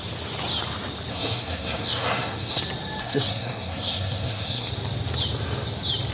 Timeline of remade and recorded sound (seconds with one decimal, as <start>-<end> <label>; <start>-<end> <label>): 0.0-1.1 recorded; 1.1-2.6 remade; 2.6-3.0 recorded; 3.0-4.7 remade; 4.7-6.1 recorded